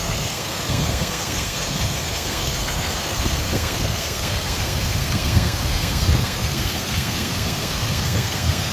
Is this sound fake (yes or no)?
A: yes